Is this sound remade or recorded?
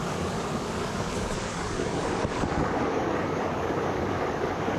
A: remade